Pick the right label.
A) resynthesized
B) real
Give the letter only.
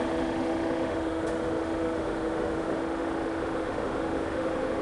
A